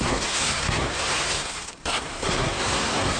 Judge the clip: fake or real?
fake